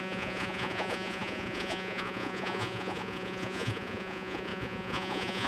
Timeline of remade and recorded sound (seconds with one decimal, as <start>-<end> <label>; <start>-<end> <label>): 0.0-5.5 remade